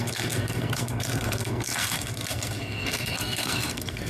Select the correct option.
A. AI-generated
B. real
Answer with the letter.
A